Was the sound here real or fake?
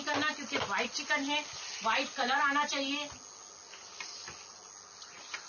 real